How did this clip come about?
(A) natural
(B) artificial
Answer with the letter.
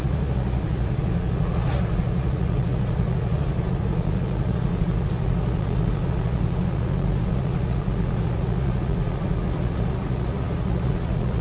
B